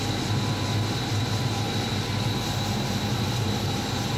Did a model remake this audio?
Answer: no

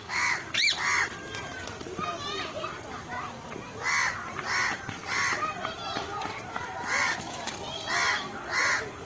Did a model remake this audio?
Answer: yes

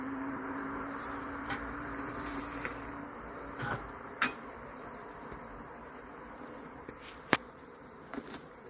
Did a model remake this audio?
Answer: yes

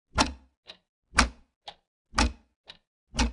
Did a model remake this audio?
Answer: no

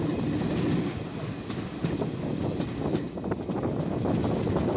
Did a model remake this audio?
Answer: no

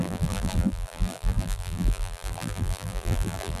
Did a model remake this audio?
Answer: yes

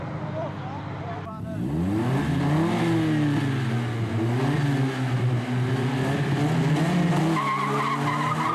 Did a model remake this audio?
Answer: no